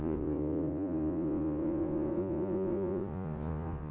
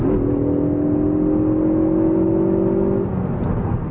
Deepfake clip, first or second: first